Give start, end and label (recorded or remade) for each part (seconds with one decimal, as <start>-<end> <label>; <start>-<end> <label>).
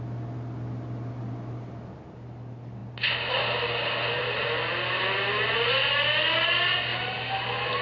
0.0-7.8 recorded